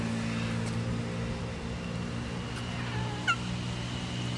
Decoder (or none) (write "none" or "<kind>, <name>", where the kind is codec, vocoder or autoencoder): none